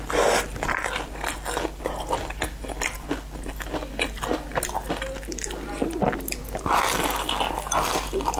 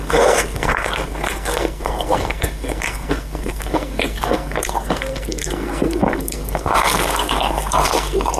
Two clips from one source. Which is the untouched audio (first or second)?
first